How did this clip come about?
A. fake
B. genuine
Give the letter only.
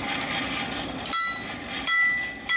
B